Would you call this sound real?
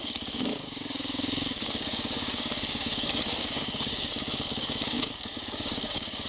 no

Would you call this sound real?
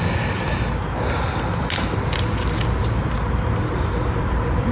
yes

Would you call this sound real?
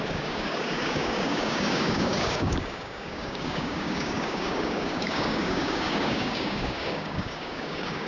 no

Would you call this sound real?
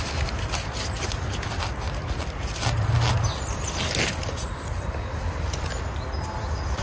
yes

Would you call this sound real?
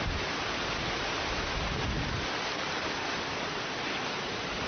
yes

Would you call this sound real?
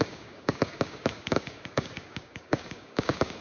no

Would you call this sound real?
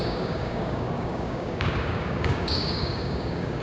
no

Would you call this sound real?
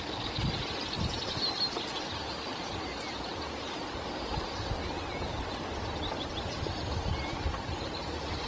yes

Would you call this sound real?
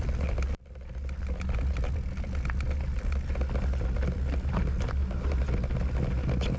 yes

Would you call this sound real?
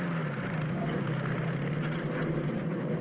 yes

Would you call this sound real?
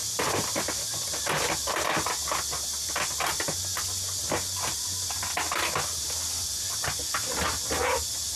yes